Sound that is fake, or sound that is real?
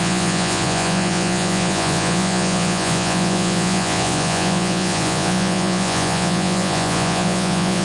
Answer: fake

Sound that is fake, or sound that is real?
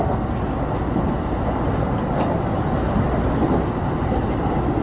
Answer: real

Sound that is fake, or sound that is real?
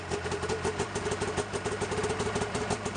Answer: fake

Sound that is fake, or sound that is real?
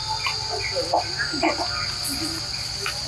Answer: real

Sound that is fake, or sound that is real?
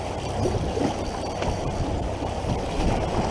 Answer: real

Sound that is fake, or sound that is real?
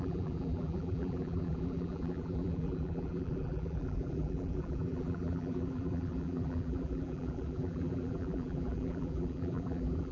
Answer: fake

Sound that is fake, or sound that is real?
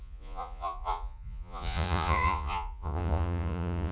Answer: fake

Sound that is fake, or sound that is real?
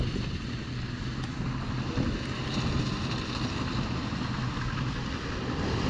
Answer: real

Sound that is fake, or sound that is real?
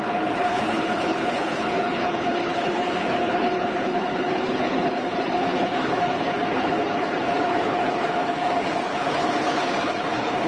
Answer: fake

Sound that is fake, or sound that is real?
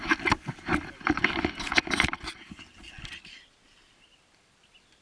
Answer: real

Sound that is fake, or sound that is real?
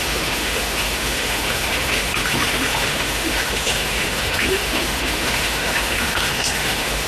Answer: fake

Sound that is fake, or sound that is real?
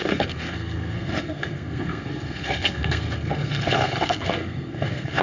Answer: fake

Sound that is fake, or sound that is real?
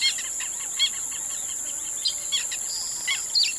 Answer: real